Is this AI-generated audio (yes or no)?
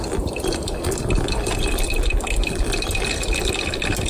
no